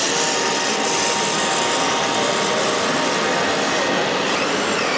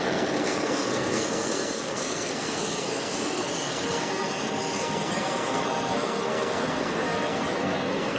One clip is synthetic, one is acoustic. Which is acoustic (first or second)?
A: first